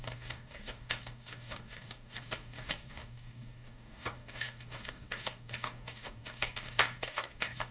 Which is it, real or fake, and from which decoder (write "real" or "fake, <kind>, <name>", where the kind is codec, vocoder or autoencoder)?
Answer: fake, codec, DAC